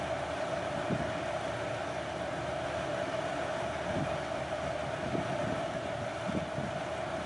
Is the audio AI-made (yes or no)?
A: no